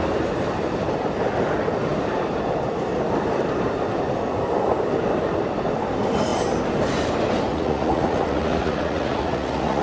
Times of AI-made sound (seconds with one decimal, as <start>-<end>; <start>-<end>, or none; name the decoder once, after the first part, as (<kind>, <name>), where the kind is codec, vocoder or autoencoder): 7.5-9.8 (vocoder, Vocos)